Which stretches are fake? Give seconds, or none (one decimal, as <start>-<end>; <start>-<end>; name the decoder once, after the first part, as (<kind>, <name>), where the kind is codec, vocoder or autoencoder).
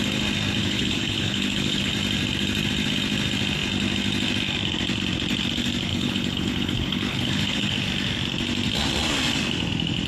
0.6-1.9 (codec, HILCodec); 5.9-7.7